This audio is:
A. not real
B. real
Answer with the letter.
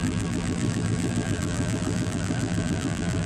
A